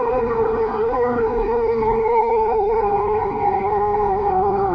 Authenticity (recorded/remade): remade